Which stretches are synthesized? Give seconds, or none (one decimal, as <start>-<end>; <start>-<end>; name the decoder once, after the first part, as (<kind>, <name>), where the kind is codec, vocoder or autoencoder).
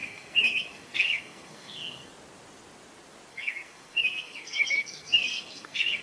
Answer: 0.0-2.1 (codec, SNAC); 3.3-6.0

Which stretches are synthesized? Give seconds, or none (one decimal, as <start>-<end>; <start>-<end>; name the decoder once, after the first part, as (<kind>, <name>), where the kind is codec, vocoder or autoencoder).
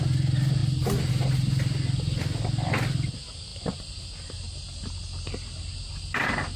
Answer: none